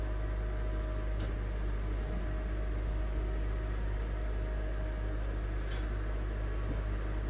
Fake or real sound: real